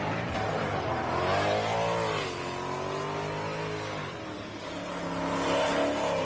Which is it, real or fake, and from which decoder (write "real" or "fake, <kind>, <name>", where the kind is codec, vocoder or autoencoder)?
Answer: real